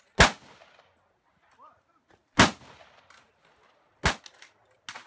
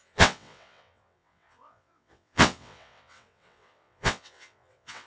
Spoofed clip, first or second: second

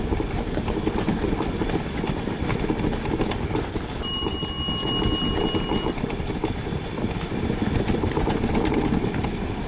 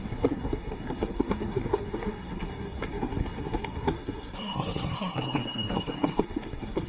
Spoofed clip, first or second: second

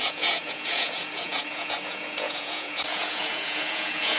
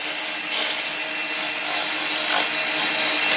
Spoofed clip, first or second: first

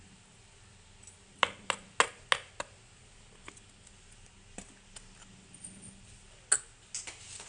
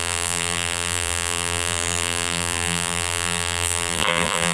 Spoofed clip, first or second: second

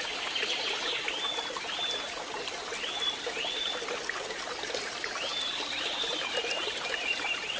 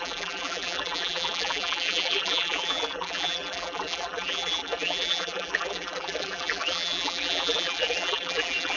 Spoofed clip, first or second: second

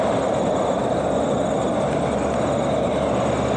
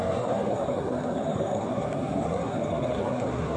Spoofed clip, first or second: second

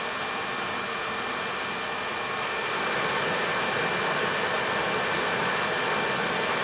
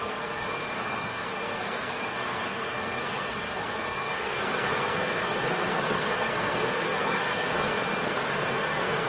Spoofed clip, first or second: second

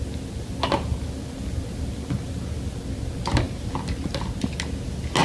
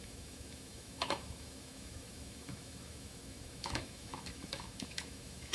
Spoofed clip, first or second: second